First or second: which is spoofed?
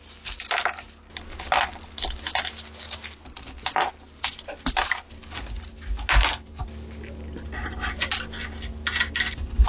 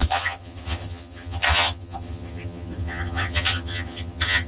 second